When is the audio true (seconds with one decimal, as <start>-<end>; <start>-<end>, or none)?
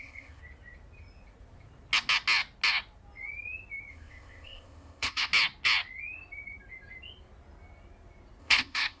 0.4-3.9; 5.3-8.4